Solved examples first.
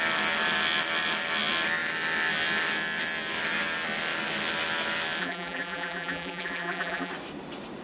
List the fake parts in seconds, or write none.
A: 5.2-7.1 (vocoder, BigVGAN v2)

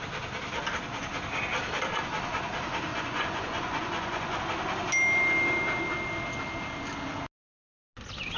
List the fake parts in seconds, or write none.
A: 2.9-4.4 (vocoder, Vocos)

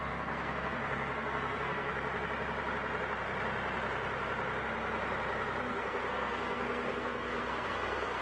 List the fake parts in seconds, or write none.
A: 0.0-1.9 (codec, SNAC); 5.7-8.2

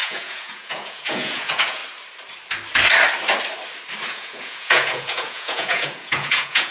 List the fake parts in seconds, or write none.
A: 0.0-1.8 (vocoder, Vocos); 4.1-6.7